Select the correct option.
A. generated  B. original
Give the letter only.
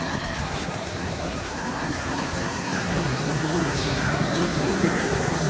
A